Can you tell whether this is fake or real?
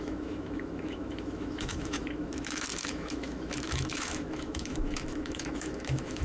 fake